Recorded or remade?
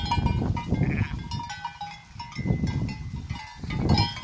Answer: recorded